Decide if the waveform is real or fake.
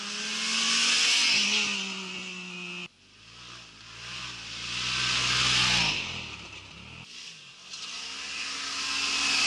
real